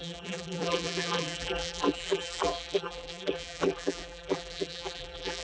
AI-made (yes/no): yes